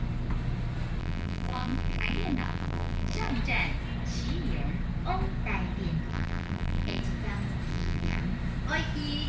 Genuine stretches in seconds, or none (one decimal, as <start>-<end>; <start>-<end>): 0.0-1.0; 3.3-6.1; 7.0-7.7; 8.2-9.3